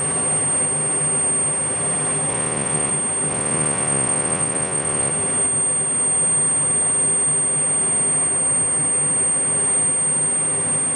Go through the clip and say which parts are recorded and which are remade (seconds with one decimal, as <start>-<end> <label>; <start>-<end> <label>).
0.0-2.3 recorded; 2.3-2.9 remade; 2.9-3.3 recorded; 3.3-5.1 remade; 5.1-11.0 recorded